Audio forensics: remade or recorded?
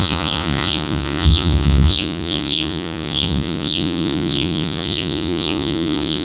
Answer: remade